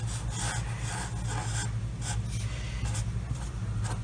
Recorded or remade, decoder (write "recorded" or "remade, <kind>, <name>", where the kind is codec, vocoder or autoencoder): recorded